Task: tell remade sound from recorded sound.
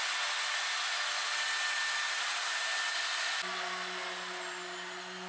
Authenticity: recorded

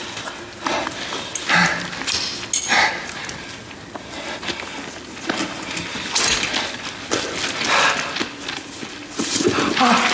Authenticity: recorded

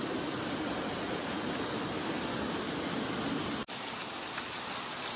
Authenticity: recorded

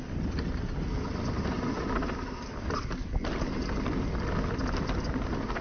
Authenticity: recorded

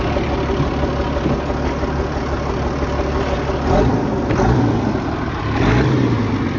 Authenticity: recorded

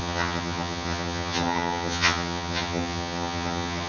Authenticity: remade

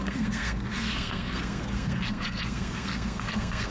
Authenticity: remade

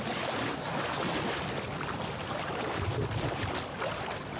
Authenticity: recorded